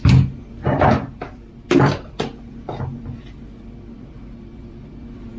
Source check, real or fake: fake